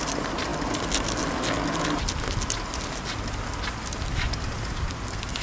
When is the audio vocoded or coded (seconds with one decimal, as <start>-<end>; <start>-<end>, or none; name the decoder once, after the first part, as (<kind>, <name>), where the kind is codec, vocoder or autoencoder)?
none